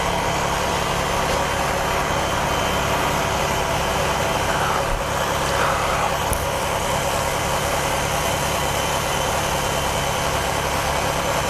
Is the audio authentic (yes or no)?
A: yes